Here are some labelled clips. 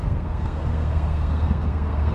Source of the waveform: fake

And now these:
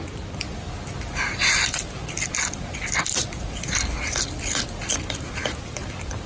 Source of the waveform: real